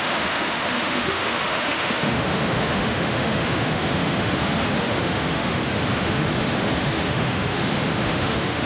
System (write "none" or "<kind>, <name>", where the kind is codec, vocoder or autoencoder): autoencoder, DAC-VAE